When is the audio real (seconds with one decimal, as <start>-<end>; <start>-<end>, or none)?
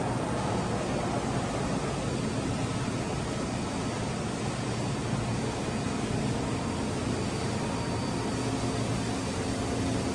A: 0.0-10.1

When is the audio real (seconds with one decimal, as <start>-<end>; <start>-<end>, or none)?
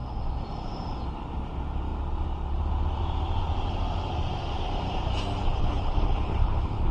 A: 0.0-5.5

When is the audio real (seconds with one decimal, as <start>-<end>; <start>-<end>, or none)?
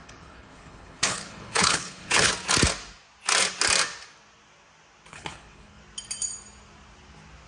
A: 2.3-5.1; 5.8-7.5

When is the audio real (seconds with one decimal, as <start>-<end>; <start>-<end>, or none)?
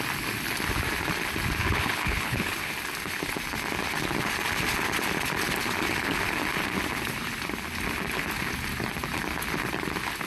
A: 0.0-1.6; 2.7-10.3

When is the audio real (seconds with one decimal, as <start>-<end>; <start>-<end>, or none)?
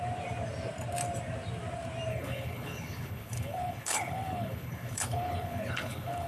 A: 0.0-2.1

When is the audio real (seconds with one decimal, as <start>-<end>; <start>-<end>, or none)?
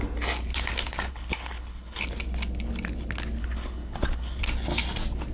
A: 0.0-1.1; 2.0-3.4; 4.4-5.3